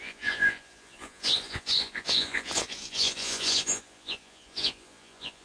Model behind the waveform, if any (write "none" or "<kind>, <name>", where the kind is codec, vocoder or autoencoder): vocoder, Vocos